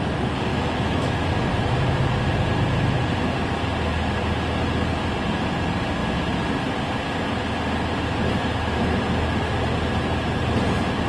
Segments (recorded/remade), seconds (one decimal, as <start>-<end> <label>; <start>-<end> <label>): 0.0-0.5 recorded; 0.5-1.3 remade; 1.3-11.1 recorded